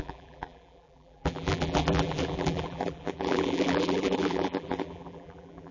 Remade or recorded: remade